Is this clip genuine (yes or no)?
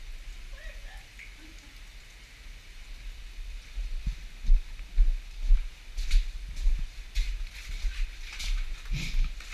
yes